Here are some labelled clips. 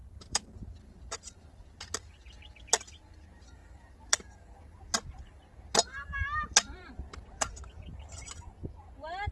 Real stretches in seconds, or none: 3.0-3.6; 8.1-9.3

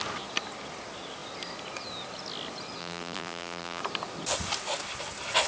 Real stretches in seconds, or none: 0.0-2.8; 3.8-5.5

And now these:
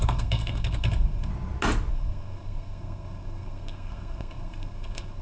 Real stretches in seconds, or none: 1.3-1.9

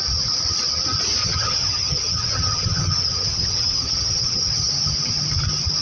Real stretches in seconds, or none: 0.0-1.2; 4.7-5.8

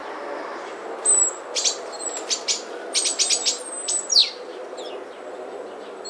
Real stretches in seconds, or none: 0.0-4.2; 4.9-6.1

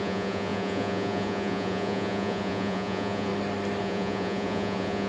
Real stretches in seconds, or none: 3.3-3.8